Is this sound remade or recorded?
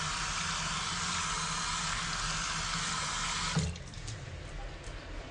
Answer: recorded